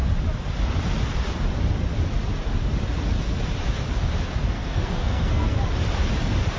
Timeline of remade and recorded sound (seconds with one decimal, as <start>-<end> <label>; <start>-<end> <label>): 0.0-4.4 recorded; 4.4-5.6 remade; 5.6-6.6 recorded